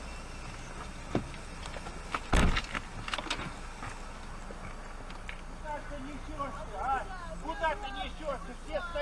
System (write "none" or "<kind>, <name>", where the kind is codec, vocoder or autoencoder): none